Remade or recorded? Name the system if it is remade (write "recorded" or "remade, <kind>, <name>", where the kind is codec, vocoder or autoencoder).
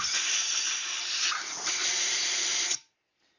recorded